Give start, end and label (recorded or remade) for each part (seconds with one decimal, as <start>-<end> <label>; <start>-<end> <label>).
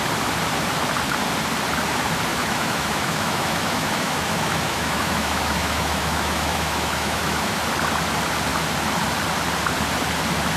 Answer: 0.0-2.3 recorded; 2.3-7.6 remade; 7.6-10.6 recorded